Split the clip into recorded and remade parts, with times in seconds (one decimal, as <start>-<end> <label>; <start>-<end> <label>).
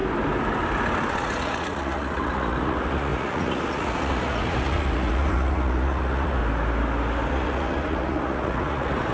0.0-1.1 recorded; 1.1-6.4 remade; 6.4-7.3 recorded; 7.3-9.1 remade